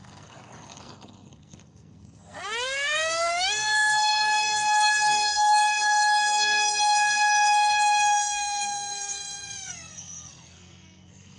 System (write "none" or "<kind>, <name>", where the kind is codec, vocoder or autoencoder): codec, SNAC